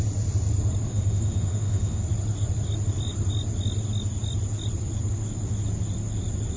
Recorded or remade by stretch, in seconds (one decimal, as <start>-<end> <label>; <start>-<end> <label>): 0.0-0.9 recorded; 0.9-2.0 remade; 2.0-6.6 recorded

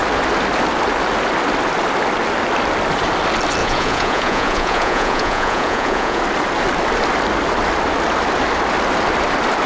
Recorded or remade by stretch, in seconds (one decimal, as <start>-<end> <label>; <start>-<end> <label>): 0.0-3.6 recorded; 3.6-6.2 remade; 6.2-9.7 recorded

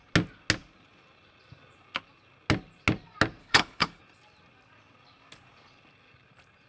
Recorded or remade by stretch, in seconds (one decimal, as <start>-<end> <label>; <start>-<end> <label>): 0.0-3.4 recorded; 3.4-4.0 remade; 4.0-6.7 recorded

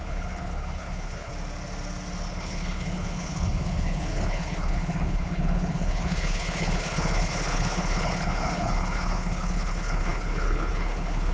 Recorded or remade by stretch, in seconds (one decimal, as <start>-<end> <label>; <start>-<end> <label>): 0.0-1.3 remade; 1.3-2.3 recorded; 2.3-11.3 remade

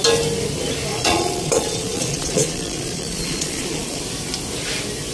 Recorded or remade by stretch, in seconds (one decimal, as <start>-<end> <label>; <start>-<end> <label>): 0.0-0.9 recorded; 0.9-4.0 remade; 4.0-5.1 recorded

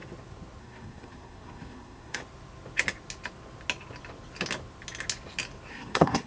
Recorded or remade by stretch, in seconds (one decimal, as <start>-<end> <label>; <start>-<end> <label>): 0.0-0.6 recorded; 0.6-2.2 remade; 2.2-5.7 recorded; 5.7-6.3 remade

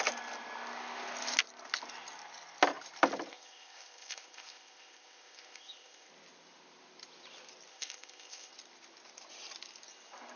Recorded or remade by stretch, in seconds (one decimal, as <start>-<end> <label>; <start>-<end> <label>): 0.0-3.3 recorded; 3.3-6.1 remade; 6.1-7.7 recorded; 7.7-8.5 remade; 8.5-10.4 recorded